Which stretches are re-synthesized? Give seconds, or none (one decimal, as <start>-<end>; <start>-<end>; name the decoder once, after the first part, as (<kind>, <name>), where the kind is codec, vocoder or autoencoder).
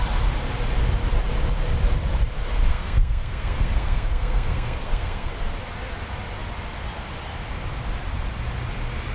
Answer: 2.7-5.3 (codec, SNAC)